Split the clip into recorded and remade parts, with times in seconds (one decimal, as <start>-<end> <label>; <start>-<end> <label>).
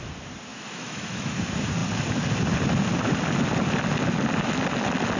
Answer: 0.0-0.5 recorded; 0.5-1.4 remade; 1.4-5.2 recorded